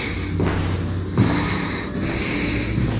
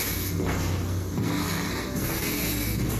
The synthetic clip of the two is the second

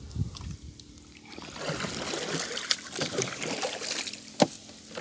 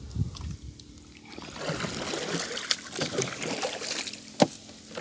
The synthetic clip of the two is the first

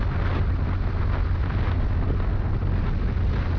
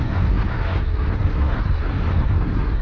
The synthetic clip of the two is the second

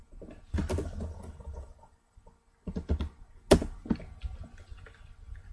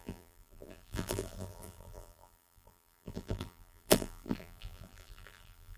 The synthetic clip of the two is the second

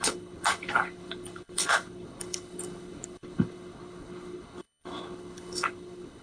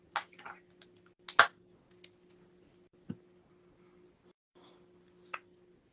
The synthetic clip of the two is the first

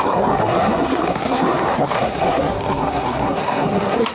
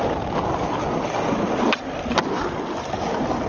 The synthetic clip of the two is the first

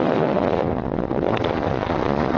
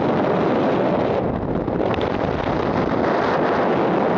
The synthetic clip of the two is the first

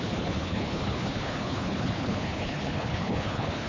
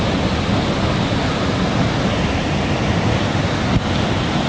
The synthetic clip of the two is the first